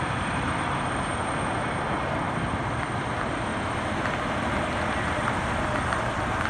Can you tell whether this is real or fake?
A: fake